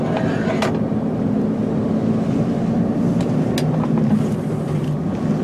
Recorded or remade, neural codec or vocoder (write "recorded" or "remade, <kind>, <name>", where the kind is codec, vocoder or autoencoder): recorded